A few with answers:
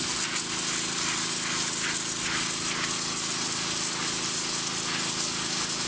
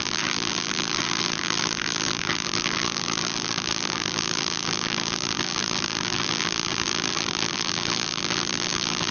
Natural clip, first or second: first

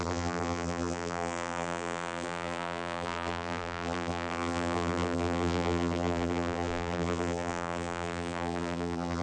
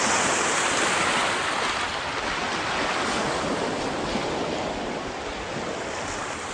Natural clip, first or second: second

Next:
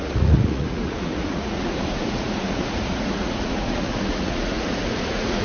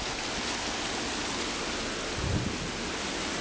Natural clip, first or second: second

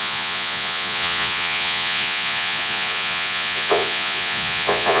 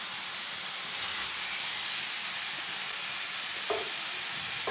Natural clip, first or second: second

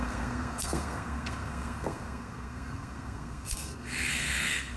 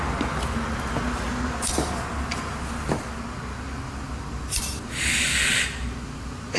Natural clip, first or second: second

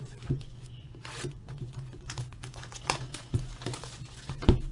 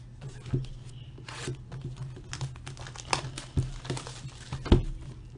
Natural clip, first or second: second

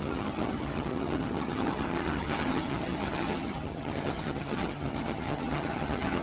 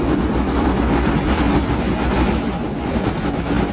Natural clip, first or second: second